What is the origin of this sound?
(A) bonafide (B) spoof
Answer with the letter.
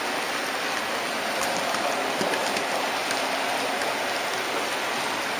A